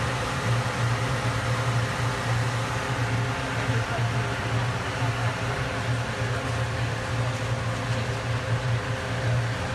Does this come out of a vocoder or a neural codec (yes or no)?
no